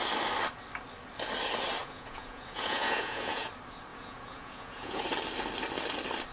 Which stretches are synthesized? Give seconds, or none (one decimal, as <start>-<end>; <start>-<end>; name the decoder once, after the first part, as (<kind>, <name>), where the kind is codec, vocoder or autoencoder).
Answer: 1.8-3.5 (vocoder, Vocos); 3.9-5.0